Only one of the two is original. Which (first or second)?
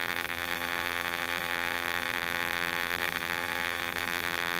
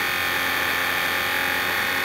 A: second